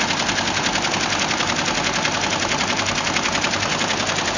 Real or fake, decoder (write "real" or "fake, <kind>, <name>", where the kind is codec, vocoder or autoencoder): real